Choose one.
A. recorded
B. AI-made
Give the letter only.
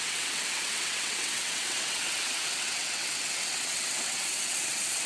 B